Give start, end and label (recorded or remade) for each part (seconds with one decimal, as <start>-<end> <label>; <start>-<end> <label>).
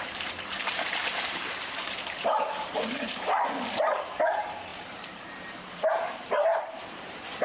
0.0-7.4 remade